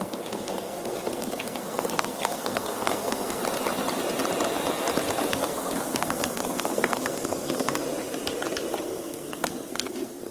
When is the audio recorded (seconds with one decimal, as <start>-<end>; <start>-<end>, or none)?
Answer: 3.4-5.3; 7.8-8.8